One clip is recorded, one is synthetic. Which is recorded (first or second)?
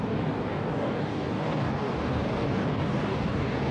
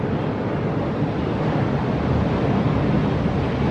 second